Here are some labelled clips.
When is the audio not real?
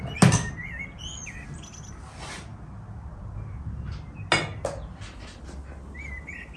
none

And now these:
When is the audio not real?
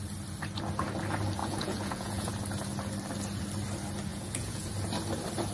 1.4-2.3 (vocoder, Vocos); 4.1-4.7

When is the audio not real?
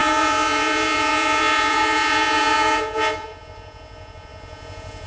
0.0-5.1 (vocoder, Vocos)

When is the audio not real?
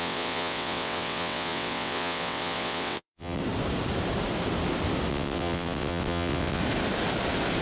0.0-3.4 (vocoder, WaveNeXt); 5.1-6.6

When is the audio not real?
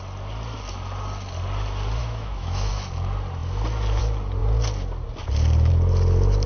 2.0-2.7 (autoencoder, DAC-VAE)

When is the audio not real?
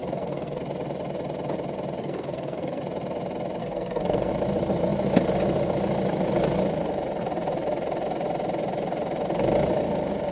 0.0-0.6 (codec, SNAC); 2.0-2.8; 3.6-4.3